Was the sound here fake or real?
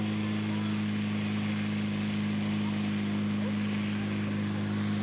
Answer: real